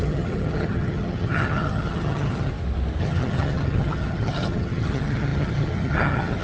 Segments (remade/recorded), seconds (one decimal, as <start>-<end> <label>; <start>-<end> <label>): 0.0-2.5 remade; 2.5-3.0 recorded; 3.0-6.4 remade